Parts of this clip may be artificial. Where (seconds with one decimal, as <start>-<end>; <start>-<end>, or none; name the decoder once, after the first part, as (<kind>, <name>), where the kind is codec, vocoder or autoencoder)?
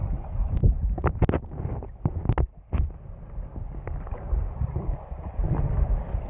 none